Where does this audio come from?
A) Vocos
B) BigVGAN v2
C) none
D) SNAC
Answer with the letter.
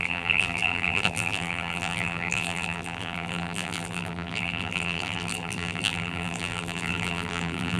B